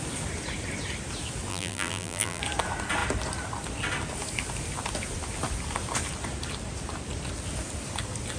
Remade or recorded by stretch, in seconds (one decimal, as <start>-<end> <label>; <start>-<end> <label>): 0.0-1.5 recorded; 1.5-2.4 remade; 2.4-8.4 recorded